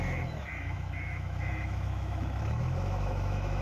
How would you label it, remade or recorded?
remade